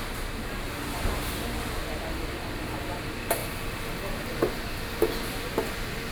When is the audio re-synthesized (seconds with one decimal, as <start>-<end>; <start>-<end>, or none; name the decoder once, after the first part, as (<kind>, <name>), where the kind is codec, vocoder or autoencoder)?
3.4-4.4 (vocoder, BigVGAN v2)

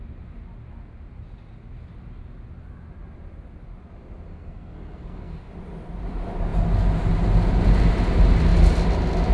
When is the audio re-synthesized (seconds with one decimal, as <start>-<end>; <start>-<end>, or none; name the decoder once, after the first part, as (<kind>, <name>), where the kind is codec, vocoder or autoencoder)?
4.3-5.5 (codec, SNAC)

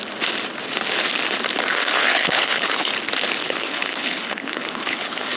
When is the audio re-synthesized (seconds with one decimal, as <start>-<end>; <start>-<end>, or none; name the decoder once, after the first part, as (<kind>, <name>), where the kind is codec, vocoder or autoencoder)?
1.7-2.9 (codec, HILCodec); 3.4-5.4

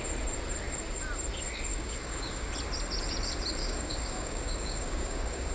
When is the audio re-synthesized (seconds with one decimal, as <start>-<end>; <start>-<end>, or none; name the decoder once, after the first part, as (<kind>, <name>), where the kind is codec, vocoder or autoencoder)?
1.7-2.5 (codec, DAC); 3.6-5.5

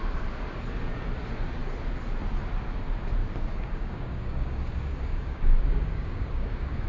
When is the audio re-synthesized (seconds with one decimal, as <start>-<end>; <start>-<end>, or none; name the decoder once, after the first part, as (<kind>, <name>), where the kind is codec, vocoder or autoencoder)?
3.2-6.9 (codec, DAC)